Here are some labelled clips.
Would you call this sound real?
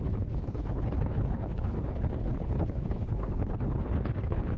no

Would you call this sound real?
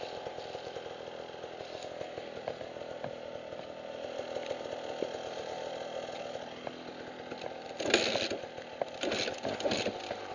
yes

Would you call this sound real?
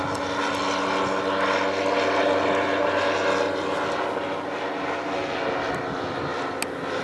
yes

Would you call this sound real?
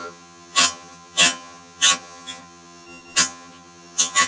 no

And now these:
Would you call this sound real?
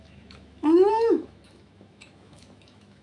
no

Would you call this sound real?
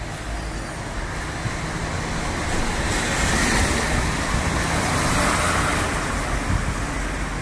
yes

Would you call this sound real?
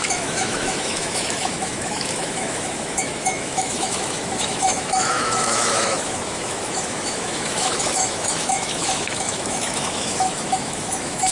no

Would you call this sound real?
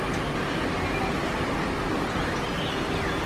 yes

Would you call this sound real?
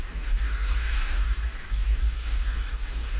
no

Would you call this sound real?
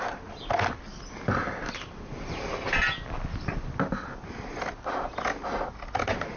yes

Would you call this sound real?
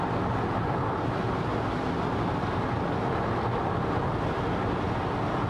yes